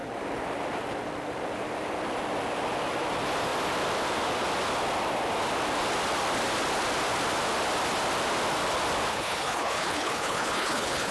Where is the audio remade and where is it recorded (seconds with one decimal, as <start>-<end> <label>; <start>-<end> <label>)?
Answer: 0.0-9.1 recorded; 9.1-11.1 remade